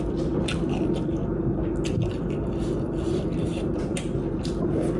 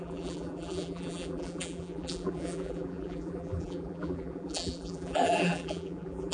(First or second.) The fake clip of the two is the second